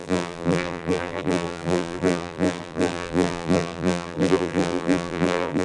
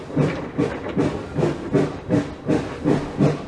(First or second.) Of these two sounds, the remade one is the first